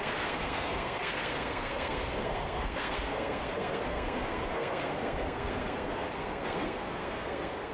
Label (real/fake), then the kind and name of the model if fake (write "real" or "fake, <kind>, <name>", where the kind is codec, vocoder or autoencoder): fake, codec, SNAC